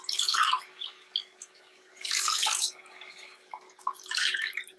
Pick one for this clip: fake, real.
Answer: fake